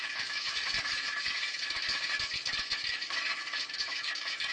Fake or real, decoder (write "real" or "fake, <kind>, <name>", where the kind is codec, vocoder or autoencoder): fake, autoencoder, DAC-VAE